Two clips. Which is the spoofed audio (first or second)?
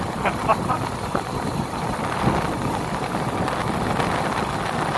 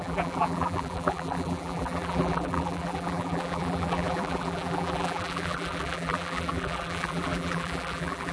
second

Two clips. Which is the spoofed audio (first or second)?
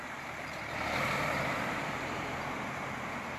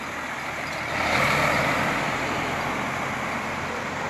first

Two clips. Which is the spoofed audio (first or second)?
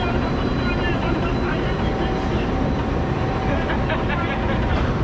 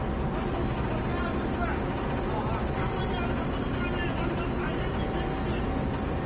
first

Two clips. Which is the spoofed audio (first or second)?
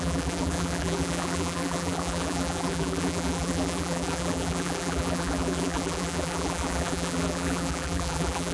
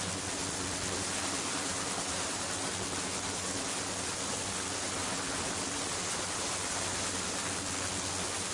first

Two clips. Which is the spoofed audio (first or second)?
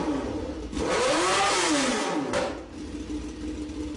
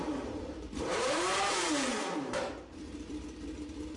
second